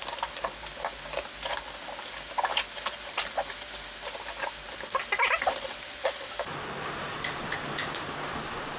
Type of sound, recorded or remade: recorded